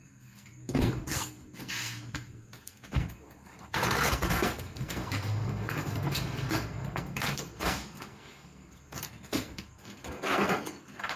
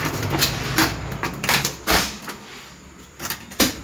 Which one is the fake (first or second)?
first